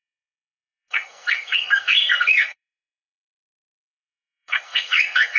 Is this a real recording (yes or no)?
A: no